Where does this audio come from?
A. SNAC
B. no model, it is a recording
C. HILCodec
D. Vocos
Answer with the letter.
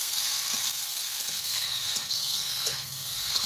A